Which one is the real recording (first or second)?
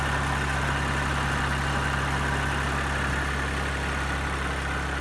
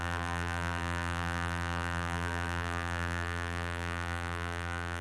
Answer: first